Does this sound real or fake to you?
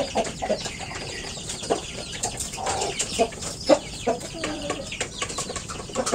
fake